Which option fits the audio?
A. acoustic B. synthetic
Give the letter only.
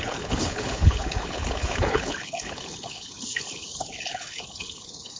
B